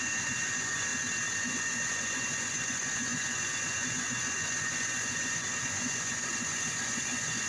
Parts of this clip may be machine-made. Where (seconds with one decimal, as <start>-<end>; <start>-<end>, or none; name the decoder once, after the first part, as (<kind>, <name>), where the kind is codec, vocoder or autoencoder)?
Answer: 0.0-0.9 (vocoder, Vocos); 1.4-7.5